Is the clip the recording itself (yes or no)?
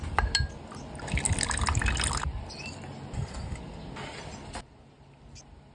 yes